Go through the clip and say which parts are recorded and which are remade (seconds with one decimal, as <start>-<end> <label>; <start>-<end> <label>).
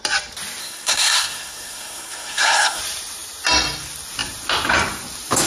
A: 0.0-0.6 recorded; 0.6-2.8 remade; 2.8-5.5 recorded